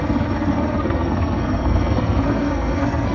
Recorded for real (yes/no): no